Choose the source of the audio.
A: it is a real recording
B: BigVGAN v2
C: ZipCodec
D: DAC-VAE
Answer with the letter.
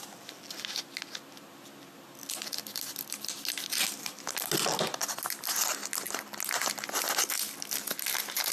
A